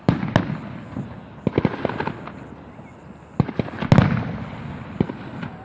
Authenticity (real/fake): real